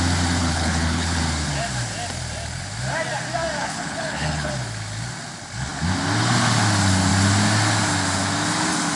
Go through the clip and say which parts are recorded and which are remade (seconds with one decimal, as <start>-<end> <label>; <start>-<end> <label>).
0.0-0.4 recorded; 0.4-1.2 remade; 1.2-3.6 recorded; 3.6-4.5 remade; 4.5-9.0 recorded